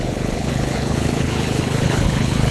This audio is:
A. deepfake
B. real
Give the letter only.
A